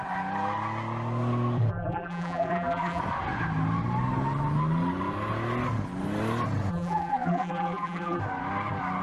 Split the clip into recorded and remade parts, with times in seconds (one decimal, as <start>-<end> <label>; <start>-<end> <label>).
0.0-1.7 recorded; 1.7-3.0 remade; 3.0-6.7 recorded; 6.7-8.2 remade; 8.2-9.0 recorded